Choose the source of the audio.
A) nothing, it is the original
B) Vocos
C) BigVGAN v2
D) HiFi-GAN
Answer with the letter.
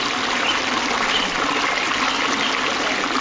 A